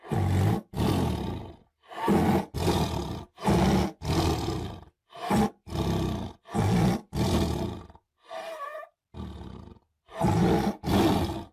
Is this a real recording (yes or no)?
yes